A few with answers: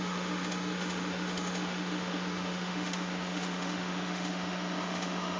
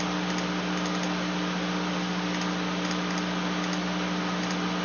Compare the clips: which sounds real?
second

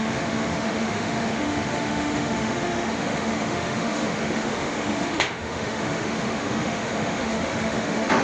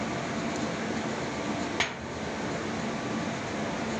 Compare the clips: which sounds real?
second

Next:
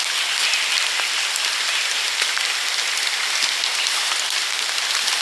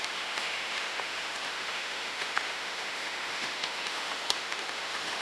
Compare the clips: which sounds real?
first